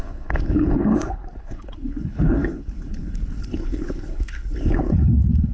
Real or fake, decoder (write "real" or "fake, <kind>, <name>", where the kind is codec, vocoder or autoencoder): fake, codec, HILCodec